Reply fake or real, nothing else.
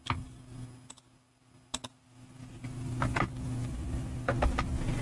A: real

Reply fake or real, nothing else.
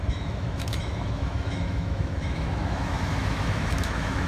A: fake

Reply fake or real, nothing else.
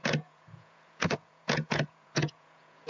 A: fake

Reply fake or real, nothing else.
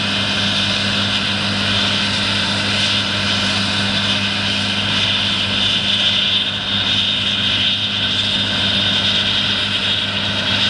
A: real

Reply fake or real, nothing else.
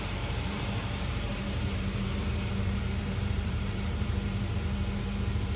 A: fake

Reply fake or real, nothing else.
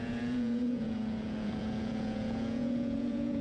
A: fake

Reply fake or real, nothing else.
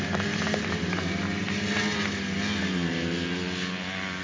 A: real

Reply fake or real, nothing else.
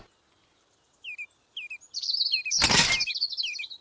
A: real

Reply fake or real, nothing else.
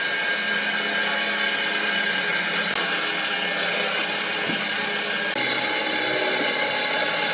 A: real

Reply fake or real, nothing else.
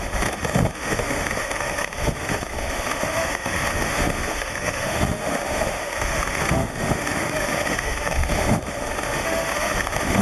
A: fake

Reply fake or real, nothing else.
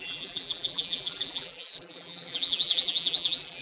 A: fake